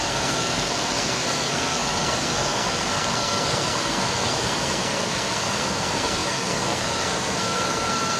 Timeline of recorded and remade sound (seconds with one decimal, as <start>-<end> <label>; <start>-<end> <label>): 0.0-8.2 remade